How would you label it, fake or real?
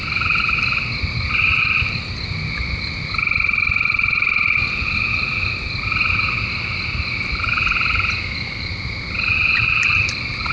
real